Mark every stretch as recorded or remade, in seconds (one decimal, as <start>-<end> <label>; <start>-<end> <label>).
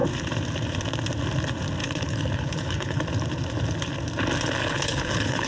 0.0-1.8 recorded; 1.8-3.0 remade; 3.0-4.6 recorded; 4.6-5.5 remade